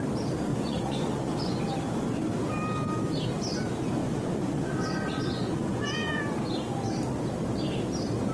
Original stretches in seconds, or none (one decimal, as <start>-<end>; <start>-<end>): 0.0-0.5; 1.6-4.0; 6.2-8.3

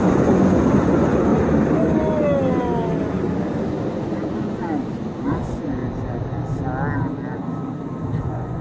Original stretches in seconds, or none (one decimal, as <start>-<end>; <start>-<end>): 1.3-3.9; 4.6-5.3; 5.8-8.2

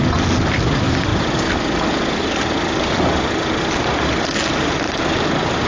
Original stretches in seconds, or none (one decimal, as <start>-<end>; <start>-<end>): 0.0-5.7

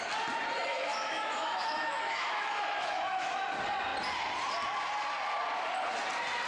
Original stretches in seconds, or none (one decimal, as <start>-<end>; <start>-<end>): 0.0-0.7; 3.5-6.5

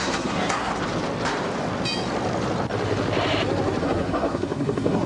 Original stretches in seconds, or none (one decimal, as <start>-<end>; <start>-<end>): 0.7-3.8